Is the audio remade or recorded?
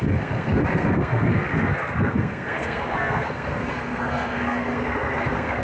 remade